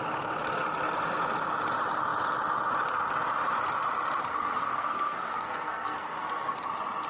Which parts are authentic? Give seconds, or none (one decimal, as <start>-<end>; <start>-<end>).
0.0-4.3; 6.3-7.1